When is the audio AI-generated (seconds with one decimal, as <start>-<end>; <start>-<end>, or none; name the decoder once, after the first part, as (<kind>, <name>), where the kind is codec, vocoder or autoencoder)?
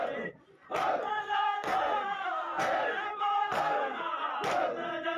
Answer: 1.0-4.1 (codec, SNAC)